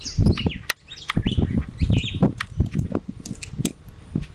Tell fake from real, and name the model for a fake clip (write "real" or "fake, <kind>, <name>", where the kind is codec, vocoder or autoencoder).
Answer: real